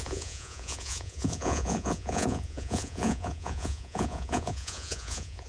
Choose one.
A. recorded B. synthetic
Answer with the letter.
B